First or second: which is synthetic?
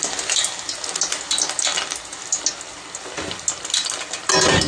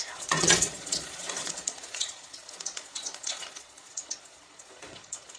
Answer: second